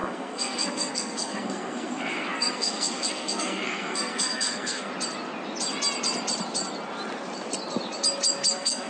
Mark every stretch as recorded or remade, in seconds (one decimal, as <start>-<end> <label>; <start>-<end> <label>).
0.0-4.9 remade; 4.9-8.5 recorded; 8.5-8.9 remade